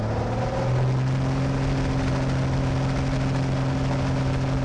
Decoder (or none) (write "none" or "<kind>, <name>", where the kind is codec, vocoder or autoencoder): none